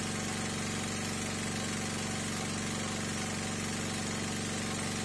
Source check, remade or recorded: recorded